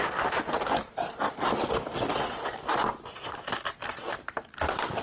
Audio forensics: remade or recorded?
recorded